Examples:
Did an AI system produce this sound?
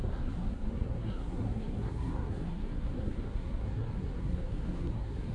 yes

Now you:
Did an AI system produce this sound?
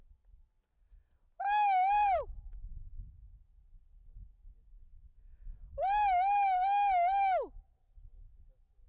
no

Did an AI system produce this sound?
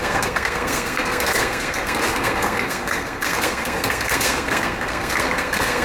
yes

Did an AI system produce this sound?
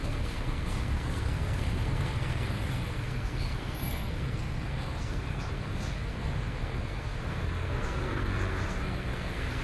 yes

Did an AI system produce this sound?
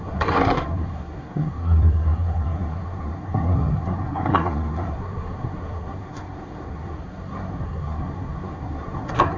yes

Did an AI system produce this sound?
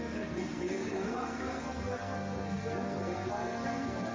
yes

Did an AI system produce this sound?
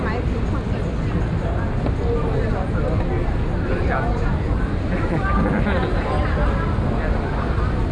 no